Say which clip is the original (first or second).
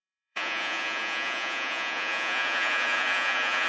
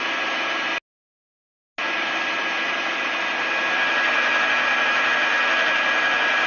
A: second